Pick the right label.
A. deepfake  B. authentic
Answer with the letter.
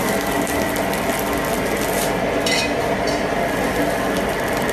B